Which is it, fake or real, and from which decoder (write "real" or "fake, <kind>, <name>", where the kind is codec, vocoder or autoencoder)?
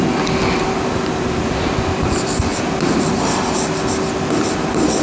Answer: real